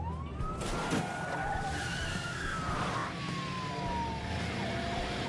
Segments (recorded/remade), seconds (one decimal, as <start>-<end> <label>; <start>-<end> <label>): 0.0-2.1 recorded; 2.1-2.6 remade; 2.6-5.3 recorded

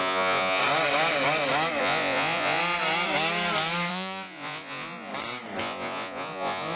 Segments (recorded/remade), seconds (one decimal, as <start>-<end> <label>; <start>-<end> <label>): 0.0-0.6 remade; 0.6-1.8 recorded; 1.8-2.6 remade; 2.6-3.9 recorded; 3.9-5.1 remade; 5.1-5.6 recorded; 5.6-6.8 remade